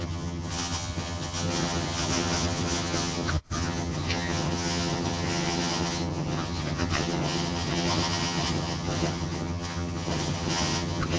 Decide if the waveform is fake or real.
fake